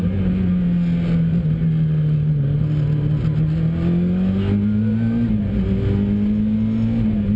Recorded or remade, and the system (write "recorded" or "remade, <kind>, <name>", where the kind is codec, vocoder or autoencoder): recorded